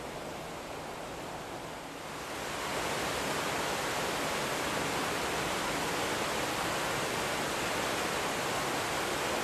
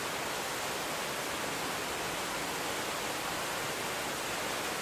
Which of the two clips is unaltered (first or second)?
first